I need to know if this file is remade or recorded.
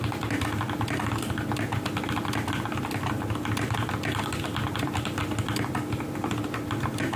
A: recorded